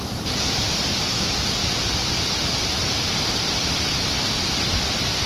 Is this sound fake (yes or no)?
no